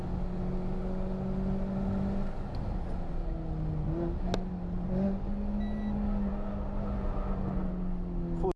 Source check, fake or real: real